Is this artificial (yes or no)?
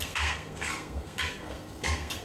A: yes